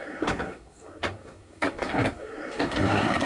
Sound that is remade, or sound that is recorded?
remade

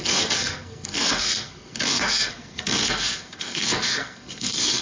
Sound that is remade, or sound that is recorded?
remade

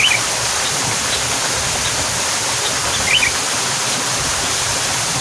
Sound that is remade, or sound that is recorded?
recorded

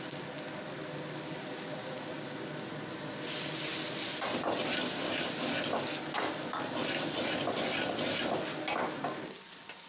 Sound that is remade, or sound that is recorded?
recorded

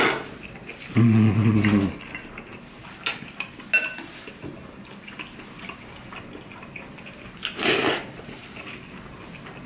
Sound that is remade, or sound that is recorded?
recorded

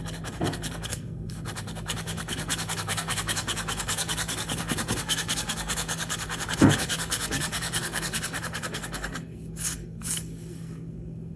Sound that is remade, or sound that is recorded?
remade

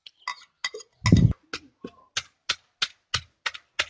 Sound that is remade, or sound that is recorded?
recorded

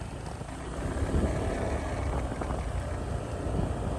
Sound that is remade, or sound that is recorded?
recorded